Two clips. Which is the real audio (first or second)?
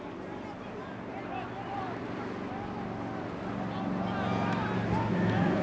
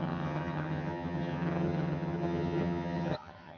first